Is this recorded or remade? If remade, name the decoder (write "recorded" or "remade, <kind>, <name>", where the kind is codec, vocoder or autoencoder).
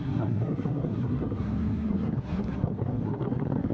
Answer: remade, codec, SNAC